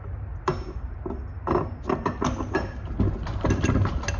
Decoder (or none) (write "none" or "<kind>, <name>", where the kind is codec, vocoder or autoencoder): none